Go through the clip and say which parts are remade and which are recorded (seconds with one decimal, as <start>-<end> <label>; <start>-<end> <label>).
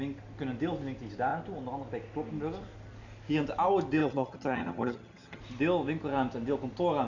0.0-4.0 recorded; 4.0-5.4 remade; 5.4-7.1 recorded